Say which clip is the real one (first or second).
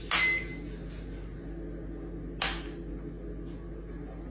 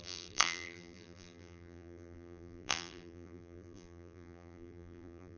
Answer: first